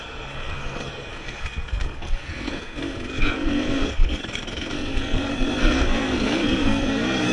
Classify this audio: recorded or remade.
remade